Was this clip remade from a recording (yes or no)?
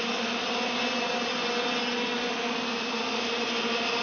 no